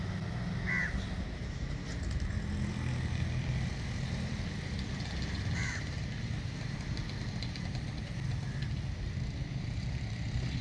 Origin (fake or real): real